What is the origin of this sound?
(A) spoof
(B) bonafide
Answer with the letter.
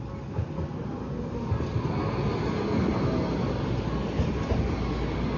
B